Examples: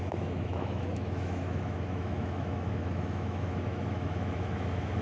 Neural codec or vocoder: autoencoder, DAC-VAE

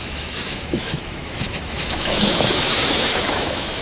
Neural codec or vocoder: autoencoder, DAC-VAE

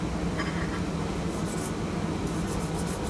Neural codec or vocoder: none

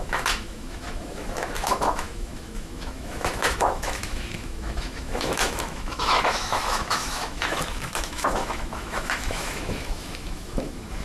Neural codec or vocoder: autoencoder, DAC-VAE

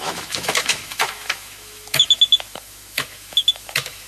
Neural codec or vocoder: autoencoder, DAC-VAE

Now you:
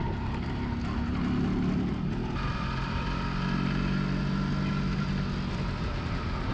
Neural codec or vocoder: none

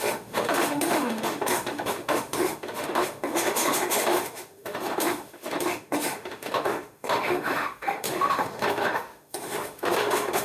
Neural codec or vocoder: autoencoder, DAC-VAE